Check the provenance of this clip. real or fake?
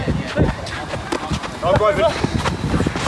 real